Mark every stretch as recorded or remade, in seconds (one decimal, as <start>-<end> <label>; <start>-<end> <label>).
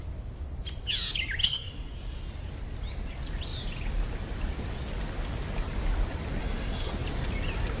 0.0-1.4 recorded; 1.4-1.9 remade; 1.9-6.4 recorded; 6.4-6.9 remade; 6.9-7.8 recorded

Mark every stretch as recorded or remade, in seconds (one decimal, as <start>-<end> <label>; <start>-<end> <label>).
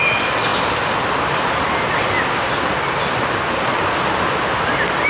0.0-5.1 recorded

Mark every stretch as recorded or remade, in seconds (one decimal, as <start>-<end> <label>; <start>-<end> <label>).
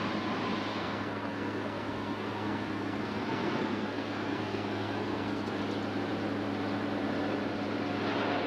0.0-0.7 recorded; 0.7-5.6 remade; 5.6-8.5 recorded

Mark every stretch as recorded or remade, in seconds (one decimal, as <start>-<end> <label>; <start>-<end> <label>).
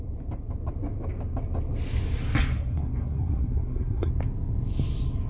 0.0-2.5 recorded; 2.5-4.1 remade; 4.1-5.3 recorded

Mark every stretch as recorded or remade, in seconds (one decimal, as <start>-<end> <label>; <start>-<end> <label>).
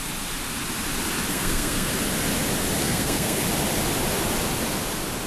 0.0-1.3 recorded; 1.3-1.9 remade; 1.9-2.8 recorded; 2.8-3.4 remade; 3.4-5.3 recorded